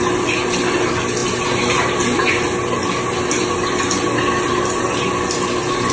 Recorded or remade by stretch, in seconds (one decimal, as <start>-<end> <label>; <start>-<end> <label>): 0.0-5.9 recorded